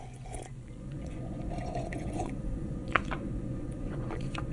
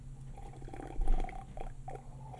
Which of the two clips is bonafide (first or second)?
second